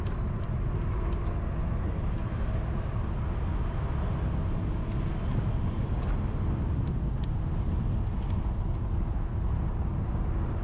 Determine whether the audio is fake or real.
real